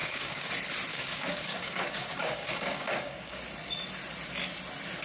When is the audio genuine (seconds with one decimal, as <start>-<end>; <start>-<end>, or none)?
0.5-0.9; 3.4-5.0